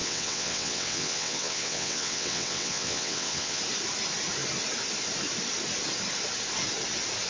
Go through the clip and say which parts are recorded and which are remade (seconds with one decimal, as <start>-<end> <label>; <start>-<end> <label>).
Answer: 0.0-3.6 remade; 3.6-7.3 recorded